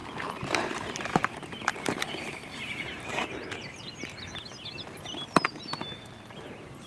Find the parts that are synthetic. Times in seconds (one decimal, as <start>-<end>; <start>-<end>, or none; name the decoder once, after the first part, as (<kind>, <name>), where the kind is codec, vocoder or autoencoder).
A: 0.0-3.9 (vocoder, BigVGAN v2)